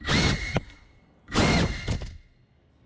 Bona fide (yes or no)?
yes